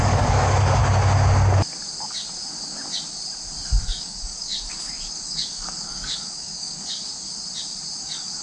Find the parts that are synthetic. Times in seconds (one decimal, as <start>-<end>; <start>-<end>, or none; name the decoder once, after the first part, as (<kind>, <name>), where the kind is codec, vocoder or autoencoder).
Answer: 0.0-0.8 (codec, DAC); 3.8-7.1; 8.0-8.4